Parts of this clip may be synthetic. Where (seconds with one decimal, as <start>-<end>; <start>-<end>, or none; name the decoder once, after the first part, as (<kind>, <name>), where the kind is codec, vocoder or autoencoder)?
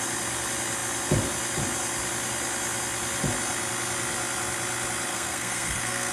5.1-6.1 (codec, SNAC)